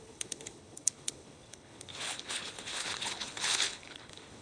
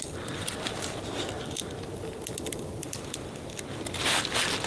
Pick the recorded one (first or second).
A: second